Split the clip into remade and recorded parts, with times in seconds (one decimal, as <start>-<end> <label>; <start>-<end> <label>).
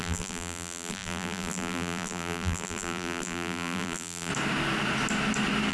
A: 0.0-4.3 remade; 4.3-5.7 recorded